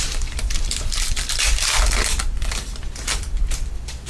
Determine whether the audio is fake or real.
fake